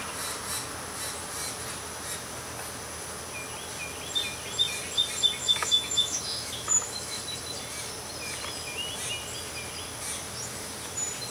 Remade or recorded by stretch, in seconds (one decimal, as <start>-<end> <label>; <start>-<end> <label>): 0.0-5.4 recorded; 5.4-7.2 remade; 7.2-11.3 recorded